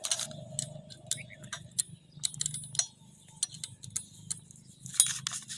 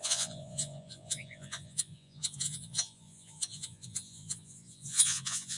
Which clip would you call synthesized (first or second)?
second